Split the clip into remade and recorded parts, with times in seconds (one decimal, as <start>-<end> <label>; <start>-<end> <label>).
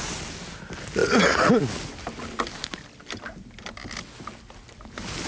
0.0-1.0 recorded; 1.0-1.6 remade; 1.6-5.3 recorded